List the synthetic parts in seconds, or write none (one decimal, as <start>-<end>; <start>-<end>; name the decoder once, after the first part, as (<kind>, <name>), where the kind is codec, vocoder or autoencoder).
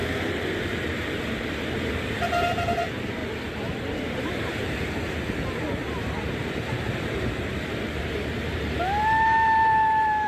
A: 0.5-3.2 (vocoder, BigVGAN v2); 4.2-10.3